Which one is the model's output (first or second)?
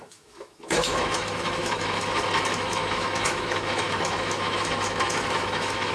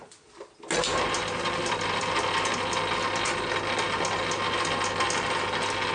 first